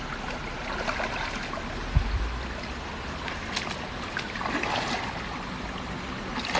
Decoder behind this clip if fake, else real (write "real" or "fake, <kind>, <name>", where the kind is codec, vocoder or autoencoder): real